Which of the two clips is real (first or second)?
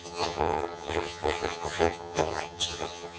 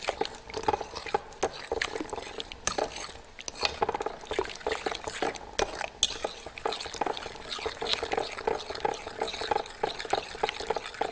second